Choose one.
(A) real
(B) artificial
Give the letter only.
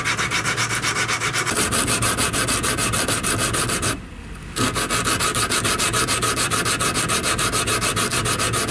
A